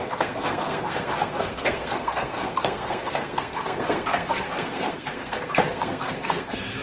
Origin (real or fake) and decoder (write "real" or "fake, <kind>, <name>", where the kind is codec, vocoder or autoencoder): fake, codec, SNAC